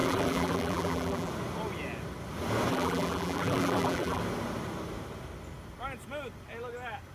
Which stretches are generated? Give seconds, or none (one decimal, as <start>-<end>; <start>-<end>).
0.0-1.3; 2.7-4.2